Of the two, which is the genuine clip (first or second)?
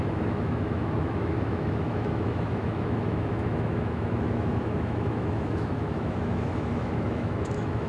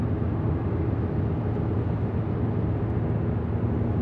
second